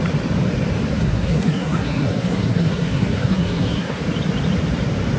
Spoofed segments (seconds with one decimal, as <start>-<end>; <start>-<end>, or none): 0.9-4.0